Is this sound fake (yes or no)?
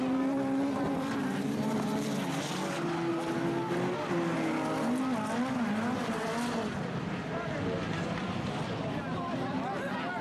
no